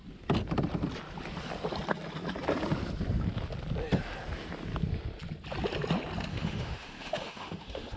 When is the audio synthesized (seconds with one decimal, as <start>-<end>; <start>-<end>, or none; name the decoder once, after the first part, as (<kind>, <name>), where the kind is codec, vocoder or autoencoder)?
6.3-8.0 (autoencoder, DAC-VAE)